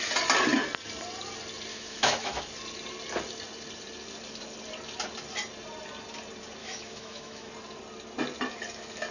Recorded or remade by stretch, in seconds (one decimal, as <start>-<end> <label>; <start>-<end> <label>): 0.0-1.7 recorded; 1.7-2.4 remade; 2.4-6.6 recorded; 6.6-7.5 remade; 7.5-9.1 recorded

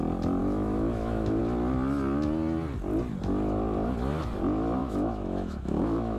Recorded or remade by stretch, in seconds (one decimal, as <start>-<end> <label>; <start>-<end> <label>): 0.0-0.4 recorded; 0.4-1.4 remade; 1.4-4.8 recorded; 4.8-6.2 remade

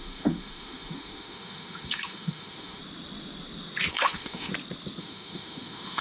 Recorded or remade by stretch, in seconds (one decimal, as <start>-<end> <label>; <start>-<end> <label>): 0.0-2.8 remade; 2.8-3.9 recorded; 3.9-4.5 remade; 4.5-5.0 recorded; 5.0-6.0 remade

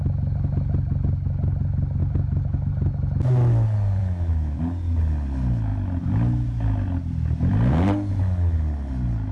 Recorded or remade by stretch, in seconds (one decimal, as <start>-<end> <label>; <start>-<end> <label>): 0.0-2.0 recorded; 2.0-2.7 remade; 2.7-4.0 recorded; 4.0-4.6 remade; 4.6-9.3 recorded

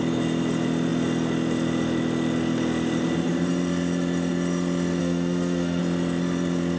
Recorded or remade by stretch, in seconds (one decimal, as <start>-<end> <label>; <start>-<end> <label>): 0.0-5.0 recorded; 5.0-5.8 remade; 5.8-6.8 recorded

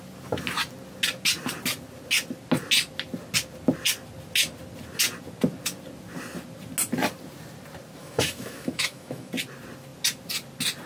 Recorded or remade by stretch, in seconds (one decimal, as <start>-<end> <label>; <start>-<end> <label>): 0.0-8.0 recorded; 8.0-9.3 remade; 9.3-10.9 recorded

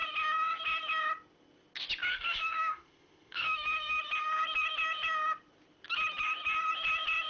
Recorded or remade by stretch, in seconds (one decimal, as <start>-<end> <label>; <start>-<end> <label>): 0.0-2.1 recorded; 2.1-4.0 remade; 4.0-7.3 recorded